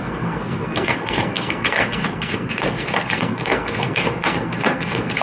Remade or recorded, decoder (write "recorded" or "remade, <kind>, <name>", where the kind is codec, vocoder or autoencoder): remade, codec, SNAC